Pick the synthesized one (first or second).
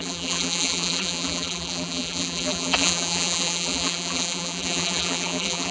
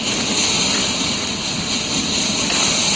first